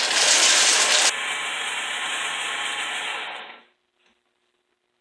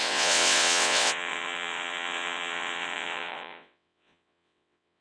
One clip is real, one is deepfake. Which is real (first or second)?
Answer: first